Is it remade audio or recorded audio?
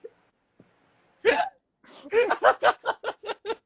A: recorded